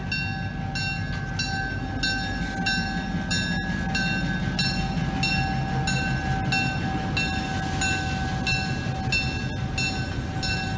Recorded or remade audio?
recorded